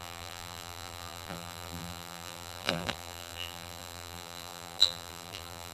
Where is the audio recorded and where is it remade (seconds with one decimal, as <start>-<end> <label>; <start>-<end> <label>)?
0.0-5.7 remade